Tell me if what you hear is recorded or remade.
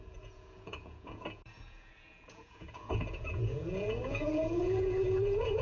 remade